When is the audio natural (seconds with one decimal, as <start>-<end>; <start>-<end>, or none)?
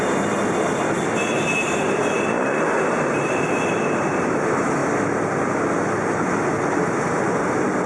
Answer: 0.0-7.9